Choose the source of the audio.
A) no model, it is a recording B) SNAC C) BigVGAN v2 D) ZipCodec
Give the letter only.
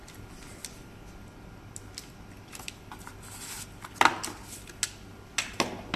A